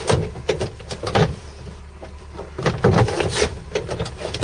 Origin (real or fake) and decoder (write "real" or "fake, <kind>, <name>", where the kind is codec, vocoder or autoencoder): real